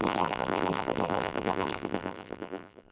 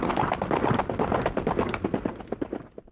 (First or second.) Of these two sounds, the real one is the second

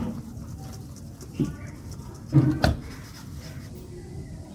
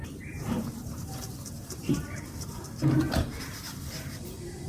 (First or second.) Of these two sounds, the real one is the first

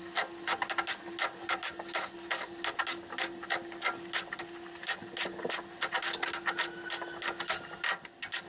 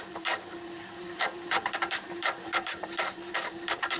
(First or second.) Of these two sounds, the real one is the first